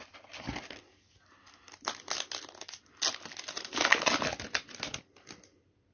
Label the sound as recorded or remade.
recorded